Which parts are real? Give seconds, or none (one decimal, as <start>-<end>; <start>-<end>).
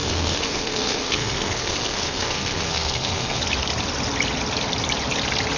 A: 3.4-5.6